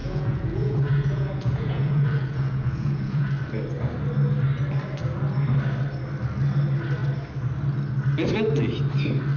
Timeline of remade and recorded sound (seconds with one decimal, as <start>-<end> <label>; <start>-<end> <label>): 0.0-3.3 remade; 3.3-9.4 recorded